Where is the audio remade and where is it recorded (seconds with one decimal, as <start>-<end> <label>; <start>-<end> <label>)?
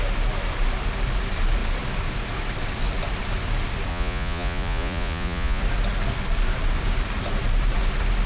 0.0-3.9 recorded; 3.9-5.6 remade; 5.6-8.3 recorded